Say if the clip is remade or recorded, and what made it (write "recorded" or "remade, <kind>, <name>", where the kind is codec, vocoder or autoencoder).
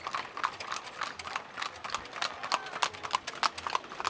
recorded